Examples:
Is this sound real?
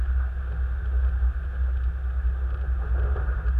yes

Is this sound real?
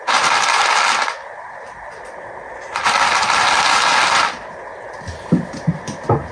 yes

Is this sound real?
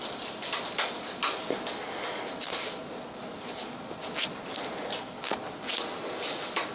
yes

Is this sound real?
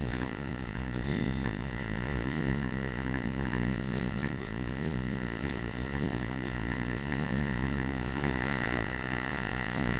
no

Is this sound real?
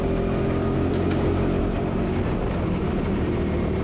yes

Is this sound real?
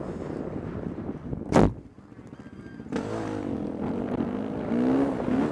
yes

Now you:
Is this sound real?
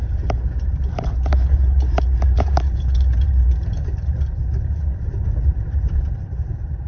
no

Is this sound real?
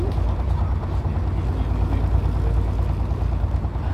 yes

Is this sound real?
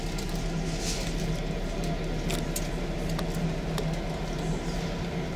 yes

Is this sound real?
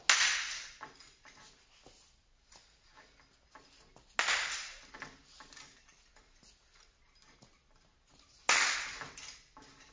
yes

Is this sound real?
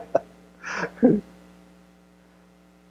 yes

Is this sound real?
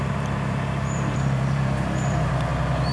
no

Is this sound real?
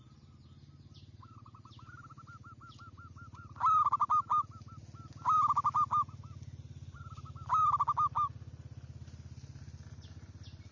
yes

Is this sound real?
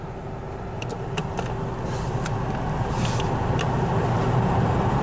yes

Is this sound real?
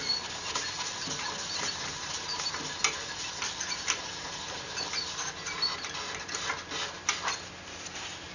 yes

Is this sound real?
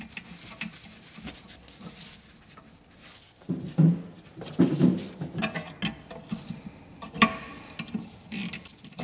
yes